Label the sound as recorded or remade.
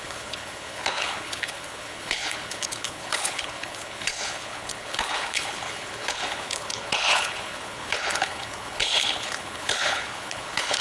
remade